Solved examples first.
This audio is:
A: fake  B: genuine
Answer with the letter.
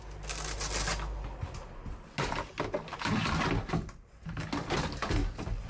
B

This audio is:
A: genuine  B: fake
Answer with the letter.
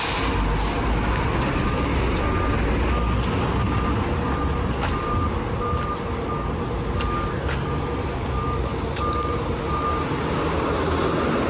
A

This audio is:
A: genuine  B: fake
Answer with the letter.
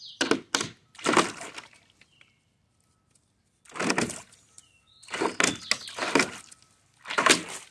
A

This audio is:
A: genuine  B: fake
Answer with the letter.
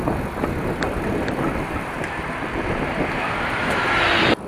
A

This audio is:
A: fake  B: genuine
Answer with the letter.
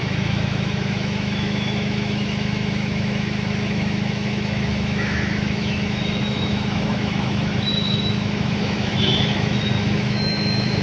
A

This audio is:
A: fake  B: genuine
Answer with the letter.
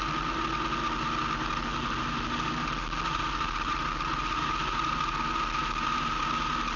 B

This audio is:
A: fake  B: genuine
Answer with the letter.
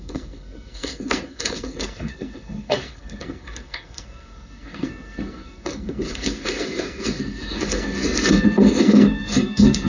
A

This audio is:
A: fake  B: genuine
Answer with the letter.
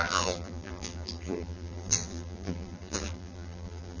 A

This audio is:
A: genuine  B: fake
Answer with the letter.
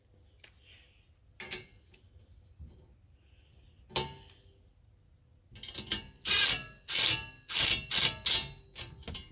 A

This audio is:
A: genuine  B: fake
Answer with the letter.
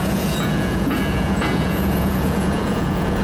B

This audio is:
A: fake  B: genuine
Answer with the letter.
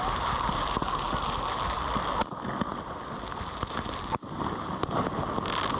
B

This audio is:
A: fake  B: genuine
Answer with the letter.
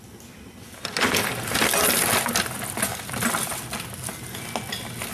B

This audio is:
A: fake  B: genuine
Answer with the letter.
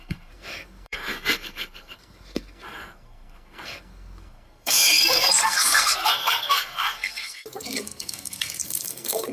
A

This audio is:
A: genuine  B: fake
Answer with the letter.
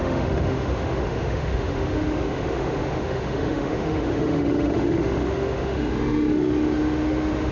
B